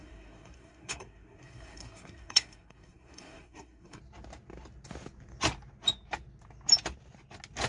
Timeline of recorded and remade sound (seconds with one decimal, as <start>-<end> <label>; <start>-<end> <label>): 0.0-4.0 remade; 4.0-7.7 recorded